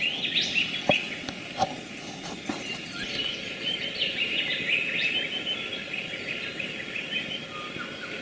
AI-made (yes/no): no